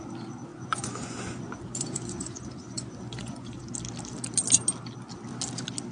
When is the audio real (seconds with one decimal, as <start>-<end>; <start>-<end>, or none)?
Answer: 0.0-0.5; 3.7-5.9